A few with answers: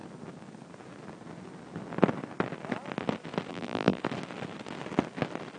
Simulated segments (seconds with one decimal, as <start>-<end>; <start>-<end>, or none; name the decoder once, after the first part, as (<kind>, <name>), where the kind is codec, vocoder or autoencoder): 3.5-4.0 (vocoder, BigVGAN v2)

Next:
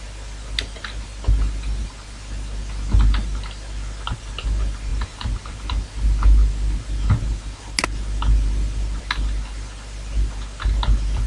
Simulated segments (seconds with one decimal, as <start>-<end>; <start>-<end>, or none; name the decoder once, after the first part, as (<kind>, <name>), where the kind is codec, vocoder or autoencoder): none

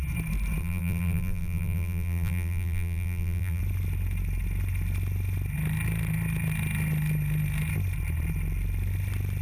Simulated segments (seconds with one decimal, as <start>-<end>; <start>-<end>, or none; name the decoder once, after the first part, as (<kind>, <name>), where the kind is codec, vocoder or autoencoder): 0.6-3.6 (vocoder, BigVGAN v2)